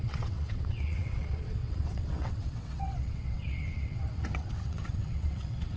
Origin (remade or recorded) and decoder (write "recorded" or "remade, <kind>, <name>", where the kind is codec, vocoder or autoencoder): remade, vocoder, WaveNeXt